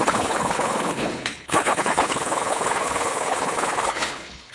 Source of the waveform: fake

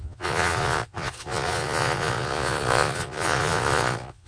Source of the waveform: fake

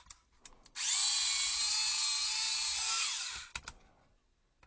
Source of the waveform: real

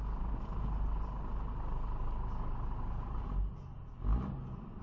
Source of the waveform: real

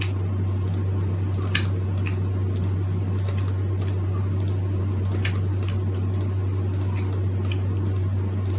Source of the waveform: real